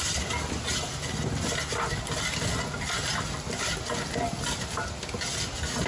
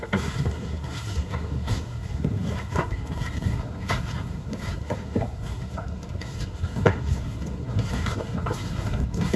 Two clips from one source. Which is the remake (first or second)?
second